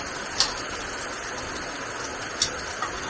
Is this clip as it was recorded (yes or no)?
yes